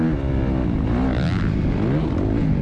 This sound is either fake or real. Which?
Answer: real